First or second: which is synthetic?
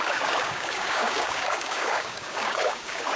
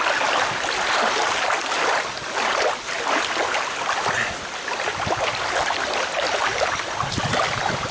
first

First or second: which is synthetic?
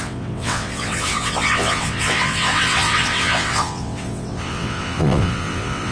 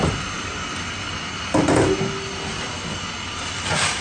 first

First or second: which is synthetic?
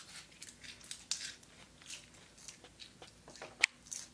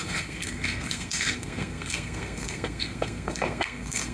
second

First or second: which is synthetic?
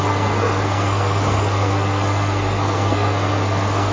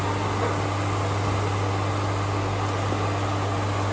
first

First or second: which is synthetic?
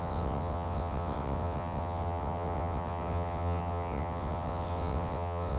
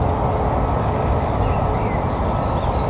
first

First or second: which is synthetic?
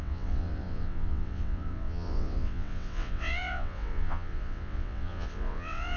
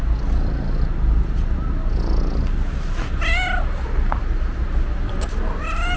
first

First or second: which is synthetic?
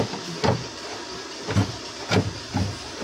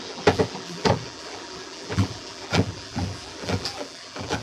second